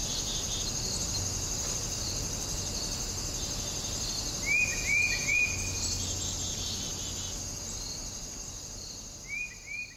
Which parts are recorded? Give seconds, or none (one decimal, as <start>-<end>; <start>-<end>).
0.0-4.7; 5.4-10.0